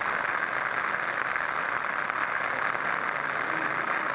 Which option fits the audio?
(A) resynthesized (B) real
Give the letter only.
B